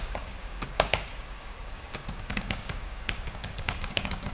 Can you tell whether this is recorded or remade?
remade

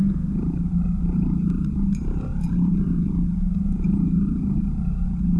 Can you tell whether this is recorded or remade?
recorded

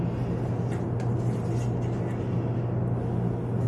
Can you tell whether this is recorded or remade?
recorded